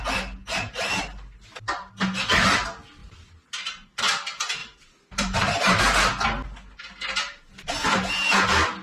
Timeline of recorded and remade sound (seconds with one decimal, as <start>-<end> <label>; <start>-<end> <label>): 0.0-3.0 recorded; 3.0-4.0 remade; 4.0-4.6 recorded; 4.6-5.8 remade; 5.8-8.8 recorded